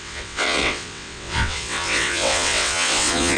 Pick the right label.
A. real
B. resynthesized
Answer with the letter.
B